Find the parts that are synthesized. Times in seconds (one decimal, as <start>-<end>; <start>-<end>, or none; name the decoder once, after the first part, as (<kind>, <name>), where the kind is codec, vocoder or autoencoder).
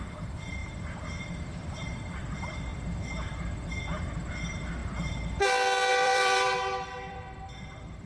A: 0.0-4.8 (vocoder, BigVGAN v2); 5.9-8.1